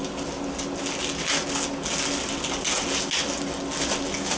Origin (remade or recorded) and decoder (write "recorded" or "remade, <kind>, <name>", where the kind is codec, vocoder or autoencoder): recorded